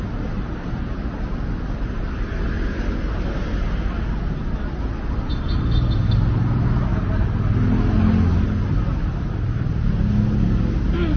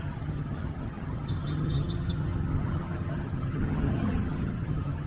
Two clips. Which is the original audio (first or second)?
first